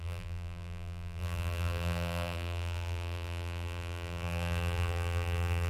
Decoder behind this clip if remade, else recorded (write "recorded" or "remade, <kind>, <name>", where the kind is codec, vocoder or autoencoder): remade, vocoder, BigVGAN v2